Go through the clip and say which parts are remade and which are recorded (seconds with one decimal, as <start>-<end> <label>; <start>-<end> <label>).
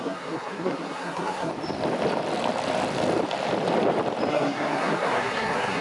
0.0-1.5 remade; 1.5-4.3 recorded; 4.3-5.8 remade